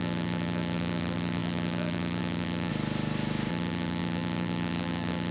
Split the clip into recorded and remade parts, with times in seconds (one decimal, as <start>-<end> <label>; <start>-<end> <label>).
0.0-2.7 remade; 2.7-3.5 recorded; 3.5-5.3 remade